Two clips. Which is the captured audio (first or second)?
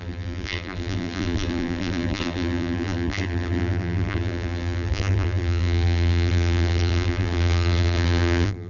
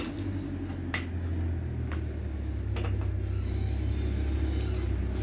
second